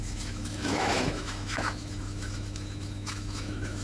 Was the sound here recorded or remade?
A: remade